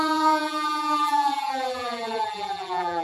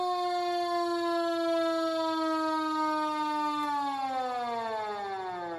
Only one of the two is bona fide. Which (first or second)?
second